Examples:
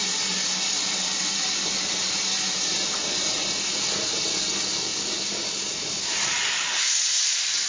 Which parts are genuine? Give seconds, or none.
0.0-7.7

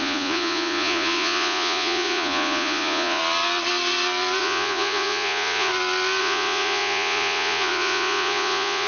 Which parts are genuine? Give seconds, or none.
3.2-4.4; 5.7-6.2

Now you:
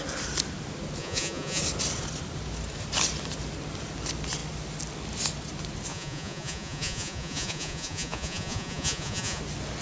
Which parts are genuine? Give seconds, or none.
0.0-1.0; 1.6-5.9; 9.4-9.8

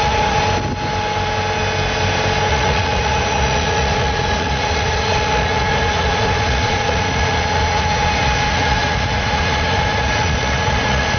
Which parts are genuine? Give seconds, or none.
0.4-2.5

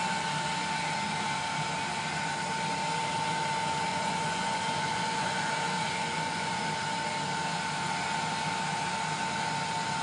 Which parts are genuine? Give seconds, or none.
0.0-3.9; 6.6-10.0

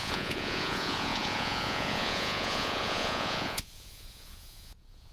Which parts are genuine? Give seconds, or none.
none